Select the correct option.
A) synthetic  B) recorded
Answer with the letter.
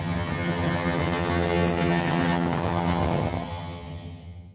A